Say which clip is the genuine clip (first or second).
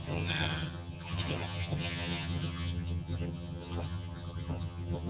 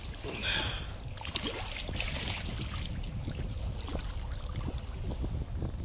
second